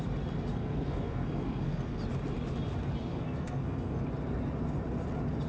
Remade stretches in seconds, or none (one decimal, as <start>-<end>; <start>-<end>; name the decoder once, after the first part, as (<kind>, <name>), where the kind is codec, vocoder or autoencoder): 0.5-2.0 (codec, SNAC); 3.1-4.0